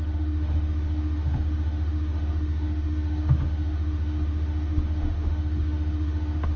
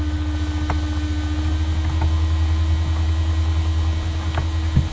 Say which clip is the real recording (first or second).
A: second